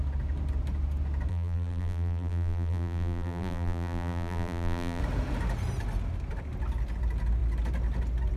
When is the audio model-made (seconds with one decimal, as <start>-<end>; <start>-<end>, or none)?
1.3-5.0